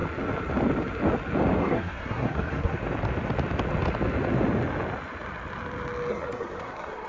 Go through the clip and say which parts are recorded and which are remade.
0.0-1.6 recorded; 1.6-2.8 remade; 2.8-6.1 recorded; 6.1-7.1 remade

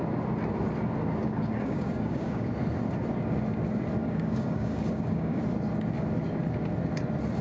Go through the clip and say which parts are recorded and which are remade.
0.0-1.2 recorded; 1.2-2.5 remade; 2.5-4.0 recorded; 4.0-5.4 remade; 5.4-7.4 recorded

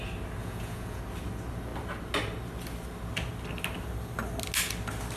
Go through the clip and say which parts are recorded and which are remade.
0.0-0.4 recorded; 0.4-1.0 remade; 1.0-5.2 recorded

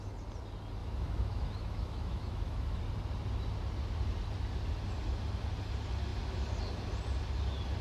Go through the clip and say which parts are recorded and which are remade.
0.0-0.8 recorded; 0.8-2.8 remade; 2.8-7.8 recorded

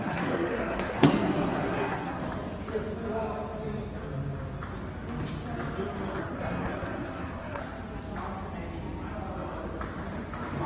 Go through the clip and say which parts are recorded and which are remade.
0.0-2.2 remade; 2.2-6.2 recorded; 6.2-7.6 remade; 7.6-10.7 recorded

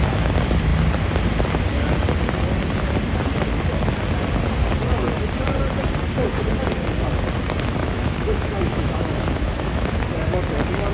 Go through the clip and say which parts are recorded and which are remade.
0.0-7.8 recorded; 7.8-10.0 remade; 10.0-10.9 recorded

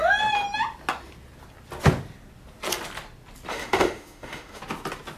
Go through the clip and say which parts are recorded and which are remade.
0.0-3.5 recorded; 3.5-4.6 remade; 4.6-5.2 recorded

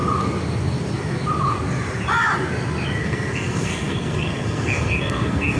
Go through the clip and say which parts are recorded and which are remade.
0.0-3.0 recorded; 3.0-5.6 remade